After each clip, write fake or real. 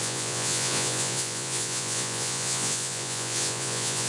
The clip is fake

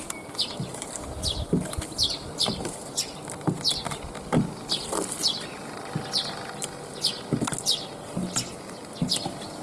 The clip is real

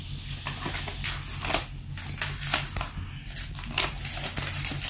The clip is real